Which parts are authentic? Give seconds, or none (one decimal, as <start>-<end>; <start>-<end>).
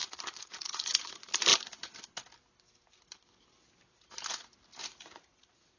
1.1-4.8